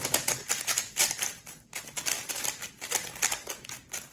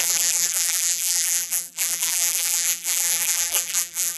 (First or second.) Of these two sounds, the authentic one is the first